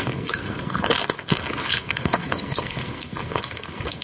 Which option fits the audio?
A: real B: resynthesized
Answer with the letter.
B